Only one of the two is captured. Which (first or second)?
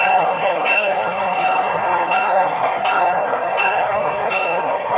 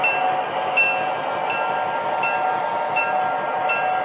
second